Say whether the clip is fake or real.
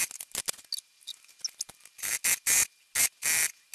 real